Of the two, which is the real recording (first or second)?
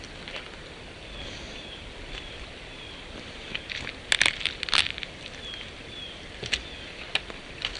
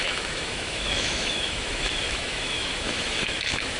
first